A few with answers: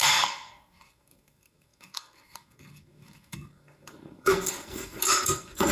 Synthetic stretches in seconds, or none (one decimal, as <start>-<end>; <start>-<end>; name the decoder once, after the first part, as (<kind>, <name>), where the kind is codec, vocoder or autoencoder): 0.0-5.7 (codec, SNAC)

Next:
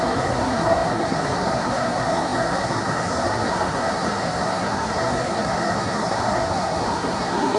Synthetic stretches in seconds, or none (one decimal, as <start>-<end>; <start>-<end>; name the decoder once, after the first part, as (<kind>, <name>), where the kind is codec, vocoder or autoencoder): 0.0-7.6 (codec, SNAC)

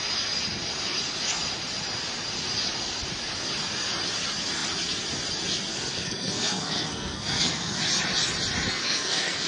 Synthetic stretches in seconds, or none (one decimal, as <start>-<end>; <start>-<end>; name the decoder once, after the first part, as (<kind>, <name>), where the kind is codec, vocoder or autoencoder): 5.7-7.8 (codec, SNAC); 8.7-9.5

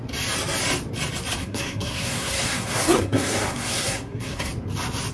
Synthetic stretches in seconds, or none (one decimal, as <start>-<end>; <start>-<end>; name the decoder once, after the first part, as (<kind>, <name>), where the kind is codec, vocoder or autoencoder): 1.4-4.5 (codec, SNAC)

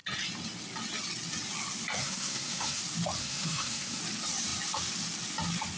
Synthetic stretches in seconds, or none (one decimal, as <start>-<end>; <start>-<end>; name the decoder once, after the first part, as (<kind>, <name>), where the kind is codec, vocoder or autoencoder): 2.0-2.8 (codec, SNAC); 3.2-4.0

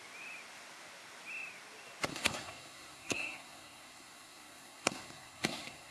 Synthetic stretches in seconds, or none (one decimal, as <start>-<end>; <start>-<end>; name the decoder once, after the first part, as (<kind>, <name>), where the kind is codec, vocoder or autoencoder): 2.1-5.9 (codec, SNAC)

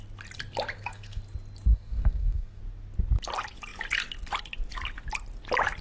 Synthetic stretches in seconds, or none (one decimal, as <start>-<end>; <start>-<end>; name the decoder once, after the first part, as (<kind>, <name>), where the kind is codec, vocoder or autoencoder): 0.7-1.2 (codec, SNAC); 1.7-2.6

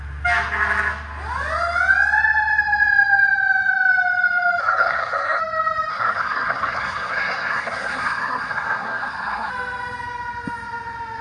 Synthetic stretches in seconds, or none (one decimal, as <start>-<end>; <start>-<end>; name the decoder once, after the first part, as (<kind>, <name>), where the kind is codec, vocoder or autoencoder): 4.6-5.4 (codec, SNAC); 5.9-9.5